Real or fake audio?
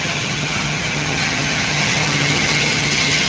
fake